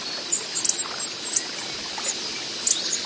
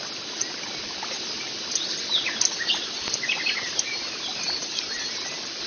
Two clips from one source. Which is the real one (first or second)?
first